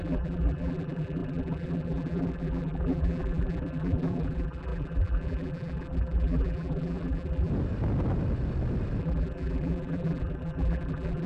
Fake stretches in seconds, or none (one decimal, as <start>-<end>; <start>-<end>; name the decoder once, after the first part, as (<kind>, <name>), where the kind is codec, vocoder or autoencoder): 0.0-7.5 (vocoder, BigVGAN v2); 9.0-11.3